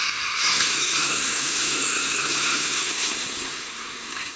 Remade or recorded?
remade